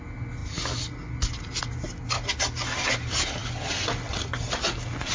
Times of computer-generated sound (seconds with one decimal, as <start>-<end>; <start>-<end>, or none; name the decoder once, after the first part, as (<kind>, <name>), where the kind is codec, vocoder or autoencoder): none